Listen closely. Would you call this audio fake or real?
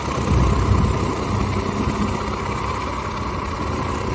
real